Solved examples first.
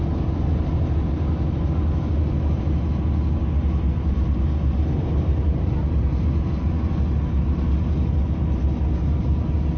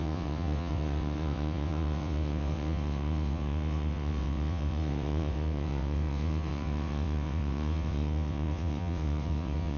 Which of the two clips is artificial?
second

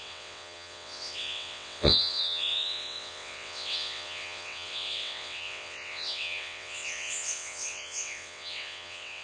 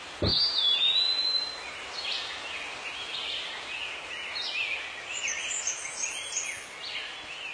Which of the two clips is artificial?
first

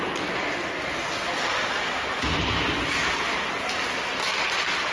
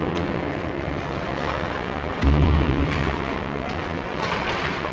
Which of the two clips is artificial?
second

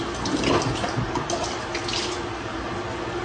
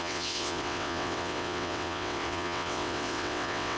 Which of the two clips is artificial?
second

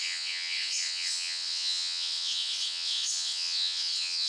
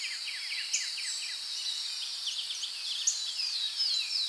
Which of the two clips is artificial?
first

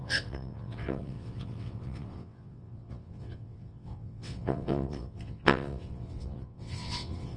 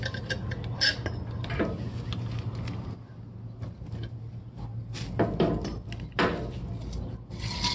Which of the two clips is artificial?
first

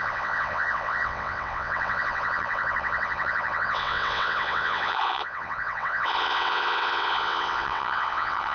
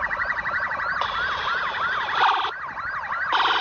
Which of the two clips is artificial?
first